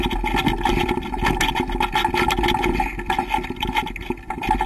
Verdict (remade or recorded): recorded